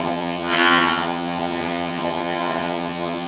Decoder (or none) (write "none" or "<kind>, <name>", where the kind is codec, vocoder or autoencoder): vocoder, HiFi-GAN